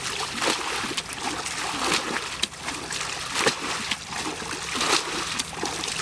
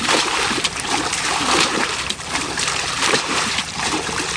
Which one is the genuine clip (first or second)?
first